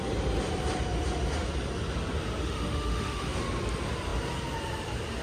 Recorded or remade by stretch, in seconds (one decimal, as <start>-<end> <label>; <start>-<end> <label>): 0.0-2.4 recorded; 2.4-3.4 remade; 3.4-5.2 recorded